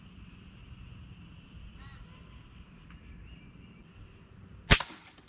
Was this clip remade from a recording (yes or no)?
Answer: no